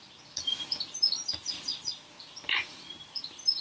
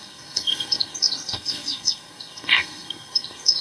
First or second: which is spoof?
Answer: second